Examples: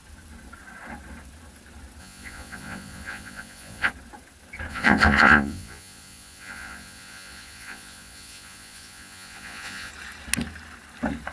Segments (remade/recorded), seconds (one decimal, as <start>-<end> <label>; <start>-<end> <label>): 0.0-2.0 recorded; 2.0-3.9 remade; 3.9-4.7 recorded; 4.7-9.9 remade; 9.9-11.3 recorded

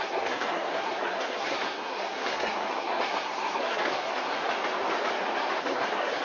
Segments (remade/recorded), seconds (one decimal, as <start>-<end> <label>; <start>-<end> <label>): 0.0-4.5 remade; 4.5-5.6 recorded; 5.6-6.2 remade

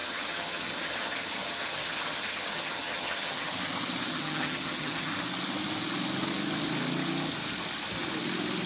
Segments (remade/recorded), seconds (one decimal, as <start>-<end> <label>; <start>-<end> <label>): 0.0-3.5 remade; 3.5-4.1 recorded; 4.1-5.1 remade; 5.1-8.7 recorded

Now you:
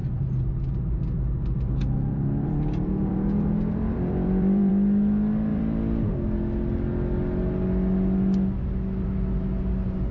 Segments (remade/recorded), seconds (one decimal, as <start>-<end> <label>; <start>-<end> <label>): 0.0-0.5 remade; 0.5-1.8 recorded; 1.8-4.7 remade; 4.7-5.5 recorded; 5.5-6.1 remade; 6.1-10.1 recorded

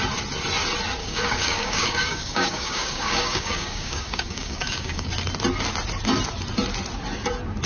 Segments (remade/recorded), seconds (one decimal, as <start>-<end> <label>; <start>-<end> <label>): 0.0-1.0 recorded; 1.0-5.1 remade; 5.1-7.7 recorded